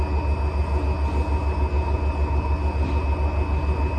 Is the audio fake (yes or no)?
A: no